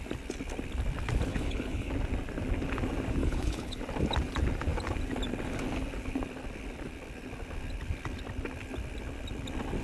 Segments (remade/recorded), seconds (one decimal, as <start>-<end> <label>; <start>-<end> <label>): 0.0-1.3 recorded; 1.3-1.9 remade; 1.9-3.2 recorded; 3.2-3.8 remade; 3.8-9.8 recorded